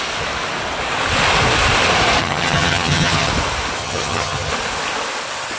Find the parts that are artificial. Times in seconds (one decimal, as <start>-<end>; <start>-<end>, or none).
2.2-3.3; 3.8-4.5